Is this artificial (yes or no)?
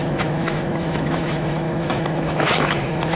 yes